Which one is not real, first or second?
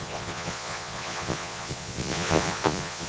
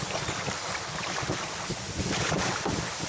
first